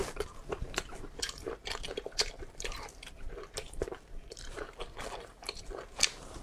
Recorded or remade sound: remade